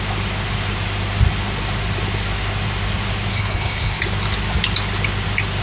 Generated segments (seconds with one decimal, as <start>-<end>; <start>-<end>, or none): 3.3-4.0